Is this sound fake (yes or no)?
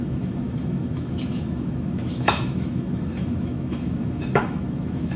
yes